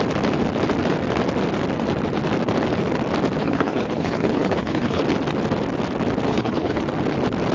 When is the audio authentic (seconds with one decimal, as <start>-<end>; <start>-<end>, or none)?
0.0-3.4; 5.0-6.3; 6.8-7.5